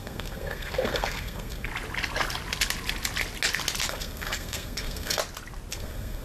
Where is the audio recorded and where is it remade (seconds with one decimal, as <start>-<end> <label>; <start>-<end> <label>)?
0.0-1.7 remade; 1.7-3.9 recorded; 3.9-5.2 remade; 5.2-5.7 recorded; 5.7-6.2 remade